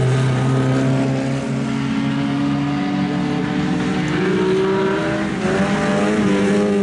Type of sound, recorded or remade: recorded